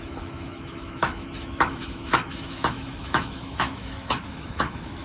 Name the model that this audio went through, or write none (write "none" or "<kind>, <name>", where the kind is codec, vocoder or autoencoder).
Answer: autoencoder, DAC-VAE